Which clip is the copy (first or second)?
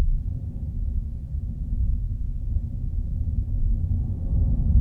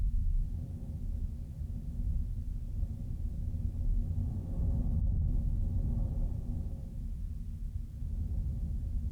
first